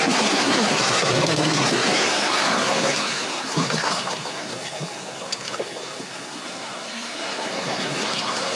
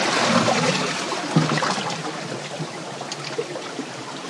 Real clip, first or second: second